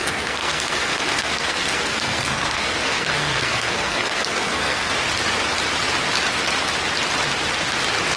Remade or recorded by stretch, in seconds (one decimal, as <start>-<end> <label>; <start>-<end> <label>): 0.0-4.9 remade; 4.9-8.2 recorded